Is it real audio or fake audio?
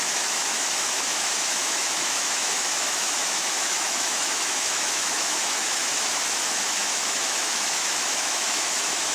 fake